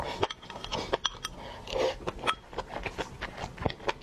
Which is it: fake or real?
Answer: real